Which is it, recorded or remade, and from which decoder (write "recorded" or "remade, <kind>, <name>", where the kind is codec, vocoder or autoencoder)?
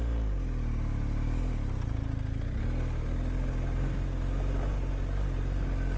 recorded